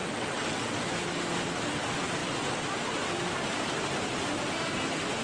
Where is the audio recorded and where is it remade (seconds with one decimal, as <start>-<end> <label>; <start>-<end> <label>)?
0.0-0.7 remade; 0.7-5.2 recorded